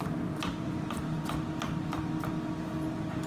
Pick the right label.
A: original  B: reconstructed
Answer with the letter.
A